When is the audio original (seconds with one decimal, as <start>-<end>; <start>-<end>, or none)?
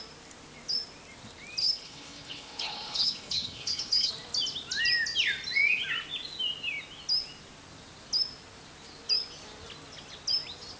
0.0-1.6; 4.1-10.8